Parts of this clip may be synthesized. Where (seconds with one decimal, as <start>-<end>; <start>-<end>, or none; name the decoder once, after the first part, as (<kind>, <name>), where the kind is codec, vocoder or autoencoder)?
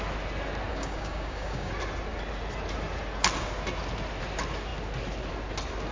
0.7-1.7 (codec, DAC)